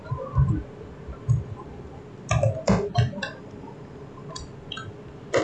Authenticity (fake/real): real